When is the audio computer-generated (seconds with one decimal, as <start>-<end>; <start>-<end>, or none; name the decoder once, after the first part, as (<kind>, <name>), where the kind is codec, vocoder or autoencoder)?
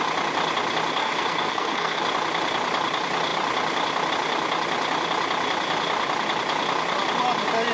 1.0-2.0 (codec, SNAC)